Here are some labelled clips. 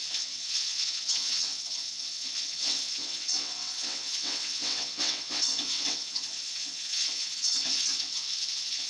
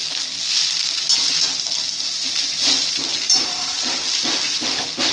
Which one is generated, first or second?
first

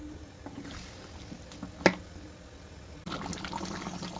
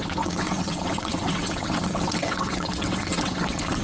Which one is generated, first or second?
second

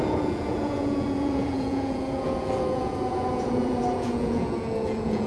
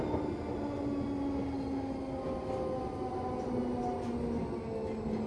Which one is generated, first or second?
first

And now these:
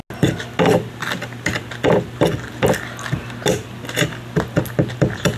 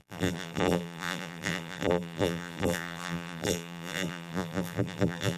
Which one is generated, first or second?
second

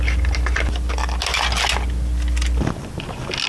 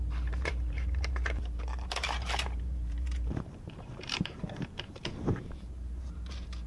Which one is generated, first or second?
second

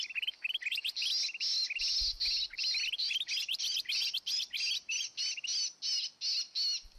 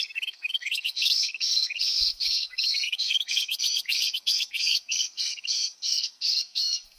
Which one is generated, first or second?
second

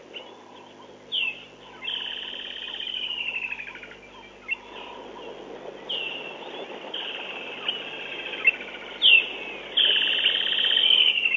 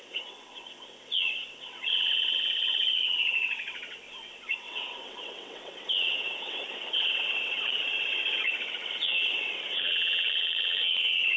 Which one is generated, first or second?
second